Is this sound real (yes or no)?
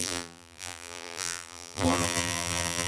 no